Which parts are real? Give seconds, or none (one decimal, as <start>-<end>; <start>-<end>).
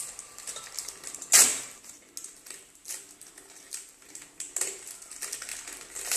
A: 0.0-5.5